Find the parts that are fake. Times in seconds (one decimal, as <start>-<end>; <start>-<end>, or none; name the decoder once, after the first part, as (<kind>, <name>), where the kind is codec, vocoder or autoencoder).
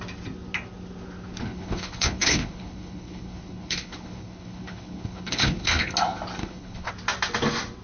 1.4-5.9 (codec, HILCodec); 6.4-6.9